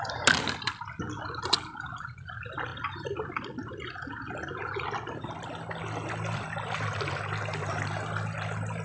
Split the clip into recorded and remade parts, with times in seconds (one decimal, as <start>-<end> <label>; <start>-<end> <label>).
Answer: 0.0-8.8 recorded